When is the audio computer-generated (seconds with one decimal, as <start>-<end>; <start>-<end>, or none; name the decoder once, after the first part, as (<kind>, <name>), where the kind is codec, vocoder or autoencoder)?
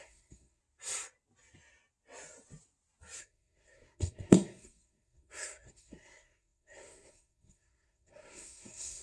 0.0-0.6 (codec, SNAC); 3.2-9.0